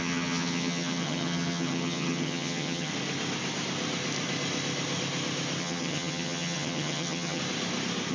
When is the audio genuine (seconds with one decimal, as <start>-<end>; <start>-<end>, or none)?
2.9-5.6; 7.4-8.1